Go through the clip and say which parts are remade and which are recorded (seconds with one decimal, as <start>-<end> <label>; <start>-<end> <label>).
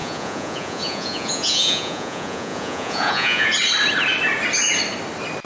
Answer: 0.0-3.5 remade; 3.5-5.5 recorded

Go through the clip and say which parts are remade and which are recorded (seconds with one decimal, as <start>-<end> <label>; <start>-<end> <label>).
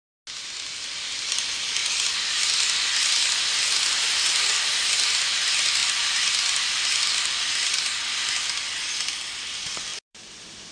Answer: 0.0-9.9 recorded; 9.9-10.7 remade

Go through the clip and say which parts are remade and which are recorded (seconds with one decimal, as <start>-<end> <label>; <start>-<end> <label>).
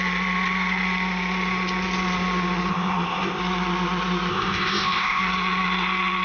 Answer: 0.0-2.7 recorded; 2.7-3.4 remade; 3.4-4.3 recorded; 4.3-5.2 remade; 5.2-6.2 recorded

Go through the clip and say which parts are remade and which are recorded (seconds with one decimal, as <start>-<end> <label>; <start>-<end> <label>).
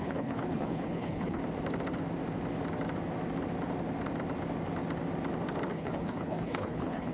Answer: 0.0-1.4 remade; 1.4-5.7 recorded; 5.7-7.1 remade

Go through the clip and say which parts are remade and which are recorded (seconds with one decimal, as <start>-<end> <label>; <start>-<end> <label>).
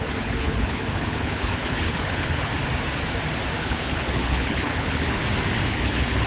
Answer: 0.0-2.5 remade; 2.5-3.6 recorded; 3.6-5.2 remade; 5.2-5.7 recorded; 5.7-6.3 remade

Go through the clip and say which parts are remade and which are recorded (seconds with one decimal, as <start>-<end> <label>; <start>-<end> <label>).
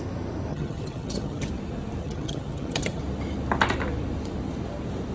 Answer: 0.0-0.5 recorded; 0.5-1.5 remade; 1.5-2.0 recorded; 2.0-3.0 remade; 3.0-5.1 recorded